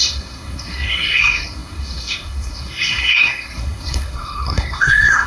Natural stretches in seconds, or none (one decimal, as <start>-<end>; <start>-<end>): none